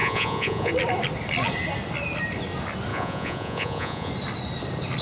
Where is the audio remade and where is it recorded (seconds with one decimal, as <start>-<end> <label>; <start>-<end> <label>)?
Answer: 0.0-0.7 remade; 0.7-2.9 recorded; 2.9-4.1 remade; 4.1-5.0 recorded